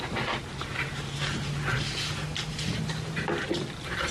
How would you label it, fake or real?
real